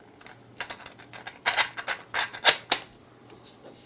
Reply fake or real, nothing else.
real